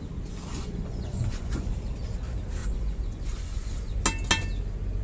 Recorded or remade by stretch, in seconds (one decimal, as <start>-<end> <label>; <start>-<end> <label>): 0.0-0.5 recorded; 0.5-1.7 remade; 1.7-2.6 recorded; 2.6-4.0 remade; 4.0-5.0 recorded